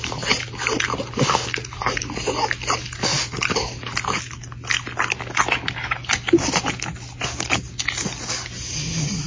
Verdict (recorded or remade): recorded